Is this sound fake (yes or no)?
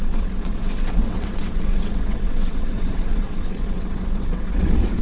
yes